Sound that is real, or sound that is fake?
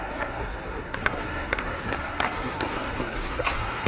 fake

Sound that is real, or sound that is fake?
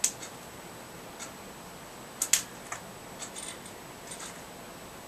real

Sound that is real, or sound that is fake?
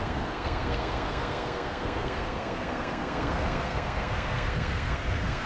fake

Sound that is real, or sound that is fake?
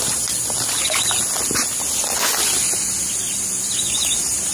real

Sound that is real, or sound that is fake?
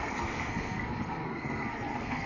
fake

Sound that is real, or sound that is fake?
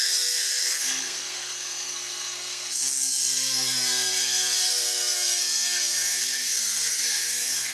fake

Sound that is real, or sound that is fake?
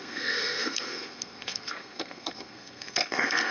fake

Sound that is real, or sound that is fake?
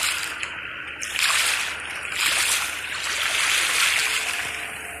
real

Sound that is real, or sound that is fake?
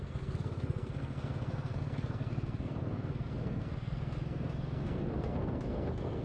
fake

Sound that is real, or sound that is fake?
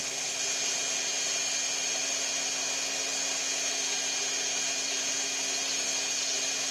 real